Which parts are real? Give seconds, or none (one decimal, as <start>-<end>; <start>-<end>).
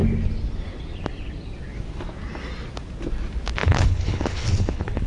0.0-3.6